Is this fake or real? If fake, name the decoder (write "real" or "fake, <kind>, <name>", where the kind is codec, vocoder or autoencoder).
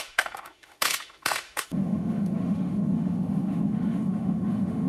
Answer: fake, autoencoder, DAC-VAE